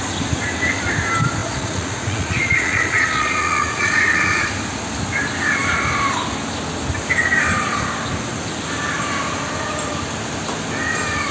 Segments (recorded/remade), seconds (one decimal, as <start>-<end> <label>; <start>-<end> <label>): 0.0-1.4 recorded; 1.4-4.4 remade; 4.4-11.3 recorded